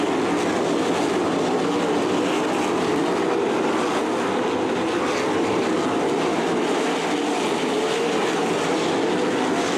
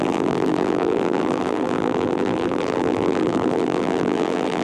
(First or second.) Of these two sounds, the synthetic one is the second